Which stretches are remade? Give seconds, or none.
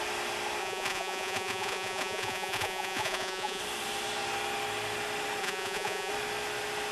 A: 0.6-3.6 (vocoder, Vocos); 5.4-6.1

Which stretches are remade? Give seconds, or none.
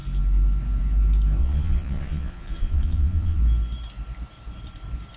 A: 1.4-3.4 (vocoder, Vocos)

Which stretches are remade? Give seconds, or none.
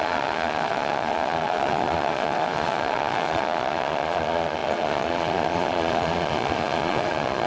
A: 0.0-7.5 (vocoder, Vocos)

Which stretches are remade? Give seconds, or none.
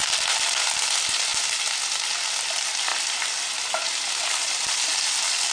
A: none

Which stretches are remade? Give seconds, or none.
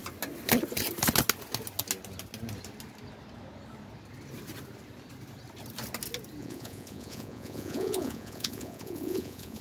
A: 6.4-9.6 (vocoder, Vocos)